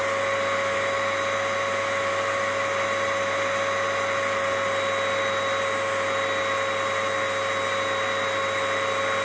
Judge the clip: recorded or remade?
recorded